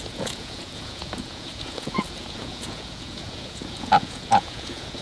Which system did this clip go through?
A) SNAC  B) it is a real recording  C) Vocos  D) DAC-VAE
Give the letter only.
C